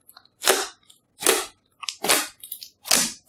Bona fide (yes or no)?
yes